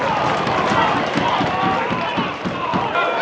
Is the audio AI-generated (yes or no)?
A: no